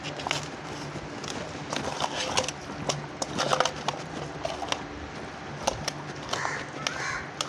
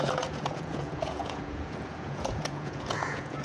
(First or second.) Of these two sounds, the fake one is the second